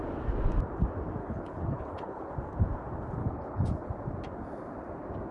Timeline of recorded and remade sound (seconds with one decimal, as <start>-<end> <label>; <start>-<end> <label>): 0.0-1.2 recorded; 1.2-2.3 remade; 2.3-3.2 recorded; 3.2-3.9 remade; 3.9-5.3 recorded